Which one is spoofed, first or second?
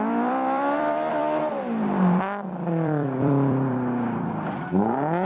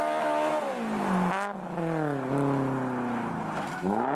first